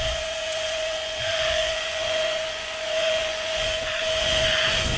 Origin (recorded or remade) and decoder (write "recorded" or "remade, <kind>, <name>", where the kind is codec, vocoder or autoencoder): remade, vocoder, Vocos